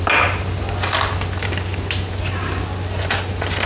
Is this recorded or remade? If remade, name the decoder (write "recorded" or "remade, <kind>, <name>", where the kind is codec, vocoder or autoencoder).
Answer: recorded